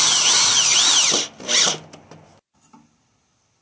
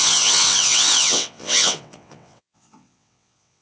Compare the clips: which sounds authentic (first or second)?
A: first